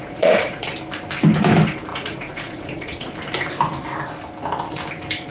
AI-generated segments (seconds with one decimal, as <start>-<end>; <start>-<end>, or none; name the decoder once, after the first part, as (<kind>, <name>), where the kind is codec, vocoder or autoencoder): 0.0-0.7 (vocoder, Vocos); 1.9-3.1